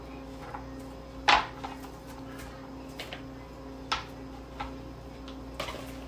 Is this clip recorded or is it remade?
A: recorded